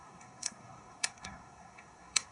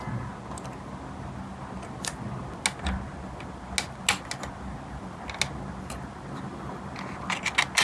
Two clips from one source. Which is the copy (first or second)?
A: first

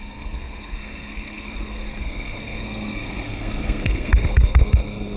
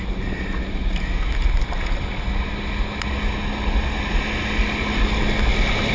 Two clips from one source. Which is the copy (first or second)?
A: first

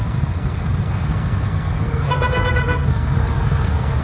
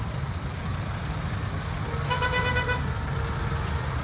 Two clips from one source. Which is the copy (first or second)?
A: first